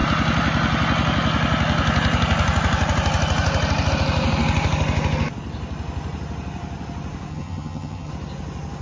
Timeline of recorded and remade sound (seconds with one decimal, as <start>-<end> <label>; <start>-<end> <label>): 0.0-7.3 recorded; 7.3-8.1 remade; 8.1-8.8 recorded